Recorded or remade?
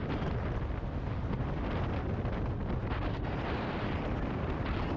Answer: recorded